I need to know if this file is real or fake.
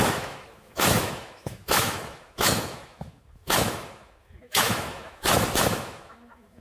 fake